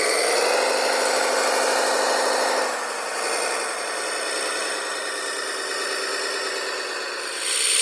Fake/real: real